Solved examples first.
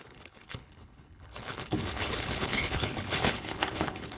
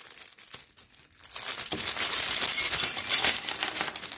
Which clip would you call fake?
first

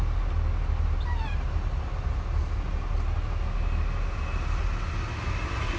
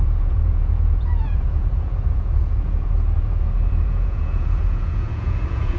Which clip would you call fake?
second